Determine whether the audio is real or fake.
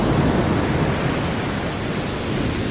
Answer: real